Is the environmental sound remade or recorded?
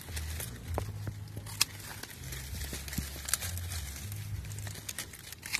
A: recorded